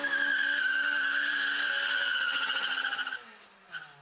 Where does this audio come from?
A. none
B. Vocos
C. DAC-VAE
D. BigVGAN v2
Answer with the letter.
A